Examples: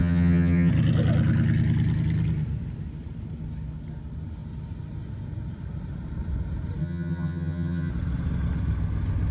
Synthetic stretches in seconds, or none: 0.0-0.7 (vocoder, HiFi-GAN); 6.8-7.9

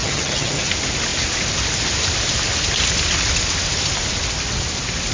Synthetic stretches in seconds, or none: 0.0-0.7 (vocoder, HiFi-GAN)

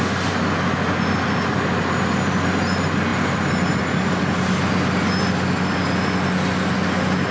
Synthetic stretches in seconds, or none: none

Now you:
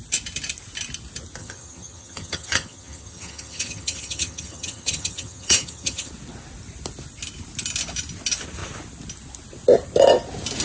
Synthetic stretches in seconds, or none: 1.4-6.1 (vocoder, HiFi-GAN)